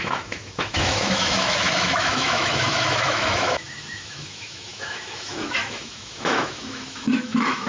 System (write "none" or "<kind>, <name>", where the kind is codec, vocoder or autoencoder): autoencoder, DAC-VAE